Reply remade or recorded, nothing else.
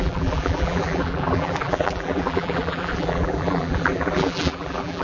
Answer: remade